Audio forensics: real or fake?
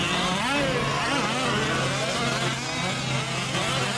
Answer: real